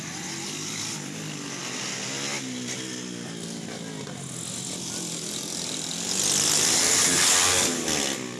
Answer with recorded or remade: recorded